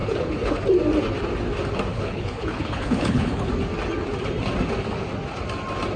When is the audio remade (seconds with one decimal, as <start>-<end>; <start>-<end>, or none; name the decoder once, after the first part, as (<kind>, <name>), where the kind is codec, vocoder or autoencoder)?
0.0-0.6 (codec, HILCodec); 1.9-3.5